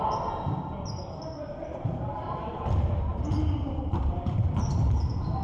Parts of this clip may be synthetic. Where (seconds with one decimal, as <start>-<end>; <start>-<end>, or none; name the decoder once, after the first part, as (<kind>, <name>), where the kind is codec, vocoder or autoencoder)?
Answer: 1.6-2.5 (vocoder, BigVGAN v2); 3.1-4.4